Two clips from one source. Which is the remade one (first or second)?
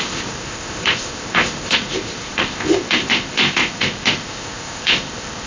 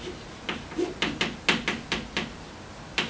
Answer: first